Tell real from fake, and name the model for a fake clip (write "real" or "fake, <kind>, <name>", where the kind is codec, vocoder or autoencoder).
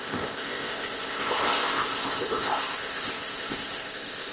fake, codec, ZipCodec